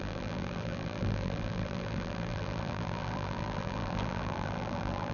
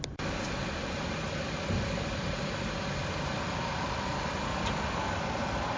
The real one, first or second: second